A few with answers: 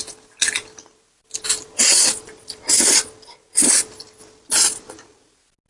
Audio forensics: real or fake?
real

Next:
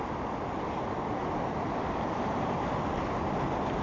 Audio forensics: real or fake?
real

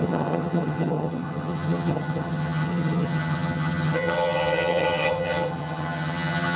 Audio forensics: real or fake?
fake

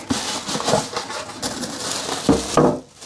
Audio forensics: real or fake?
real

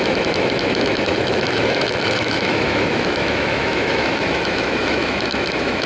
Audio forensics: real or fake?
fake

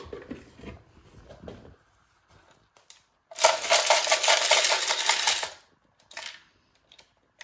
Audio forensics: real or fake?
real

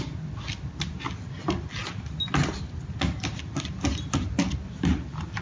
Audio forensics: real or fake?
real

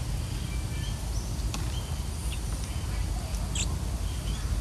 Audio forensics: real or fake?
real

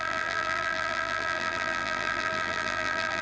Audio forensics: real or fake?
fake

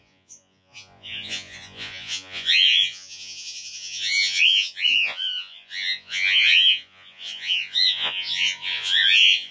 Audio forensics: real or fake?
fake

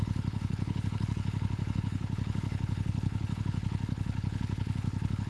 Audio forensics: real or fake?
fake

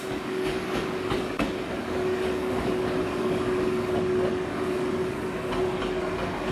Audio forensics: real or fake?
fake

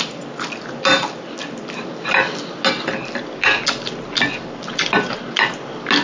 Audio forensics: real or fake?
real